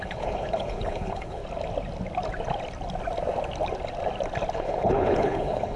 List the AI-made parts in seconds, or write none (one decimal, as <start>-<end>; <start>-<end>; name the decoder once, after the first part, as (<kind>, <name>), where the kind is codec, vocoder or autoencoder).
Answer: 0.0-1.4 (codec, HILCodec); 4.5-5.8